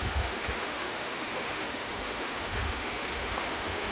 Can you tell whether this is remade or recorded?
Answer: remade